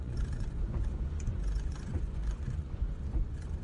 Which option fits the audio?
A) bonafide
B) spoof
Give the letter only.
B